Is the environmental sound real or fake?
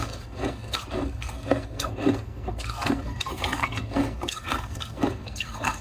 fake